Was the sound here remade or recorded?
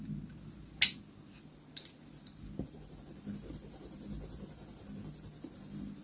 recorded